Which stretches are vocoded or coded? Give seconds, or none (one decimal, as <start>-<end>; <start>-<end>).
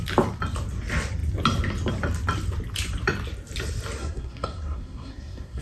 4.0-5.6